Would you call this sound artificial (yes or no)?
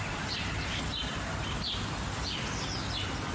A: no